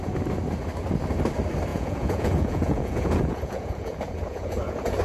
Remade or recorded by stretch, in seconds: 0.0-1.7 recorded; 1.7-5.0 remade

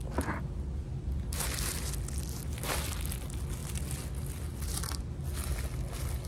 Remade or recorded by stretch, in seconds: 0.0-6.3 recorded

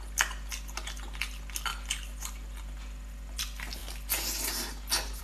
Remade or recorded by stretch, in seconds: 0.0-5.2 recorded

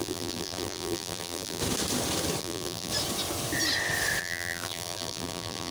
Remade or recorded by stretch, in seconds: 0.0-1.6 remade; 1.6-2.4 recorded; 2.4-2.9 remade; 2.9-4.2 recorded; 4.2-5.7 remade

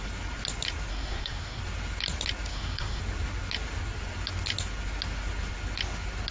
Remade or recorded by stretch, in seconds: 0.0-0.9 recorded; 0.9-1.6 remade; 1.6-2.5 recorded; 2.5-3.0 remade; 3.0-6.3 recorded